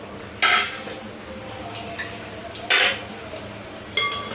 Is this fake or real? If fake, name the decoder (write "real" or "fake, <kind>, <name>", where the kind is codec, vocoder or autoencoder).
real